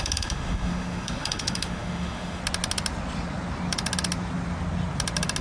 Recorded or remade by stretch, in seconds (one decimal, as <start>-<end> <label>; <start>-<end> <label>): 0.0-2.4 remade; 2.4-5.4 recorded